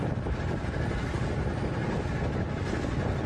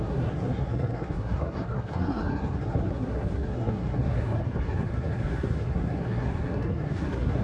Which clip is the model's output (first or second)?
second